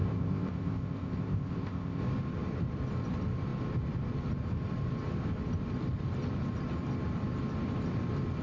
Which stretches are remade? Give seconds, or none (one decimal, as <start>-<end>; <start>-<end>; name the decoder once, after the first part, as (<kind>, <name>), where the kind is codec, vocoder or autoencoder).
0.0-2.0 (codec, ZipCodec)